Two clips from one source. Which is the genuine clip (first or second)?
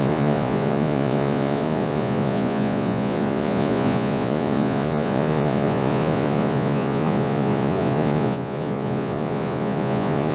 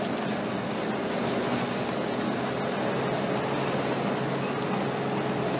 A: second